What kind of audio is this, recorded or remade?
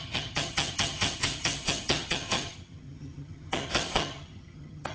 remade